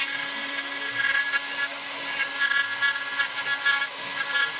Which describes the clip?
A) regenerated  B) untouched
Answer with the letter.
B